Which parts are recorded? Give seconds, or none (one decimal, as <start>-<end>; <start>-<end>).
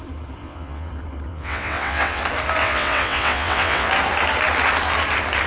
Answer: 0.0-0.4; 0.9-1.3; 2.2-2.6; 3.9-5.5